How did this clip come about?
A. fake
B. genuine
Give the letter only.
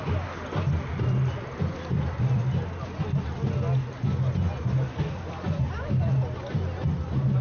B